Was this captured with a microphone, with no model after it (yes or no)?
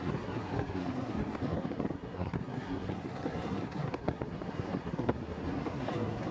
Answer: no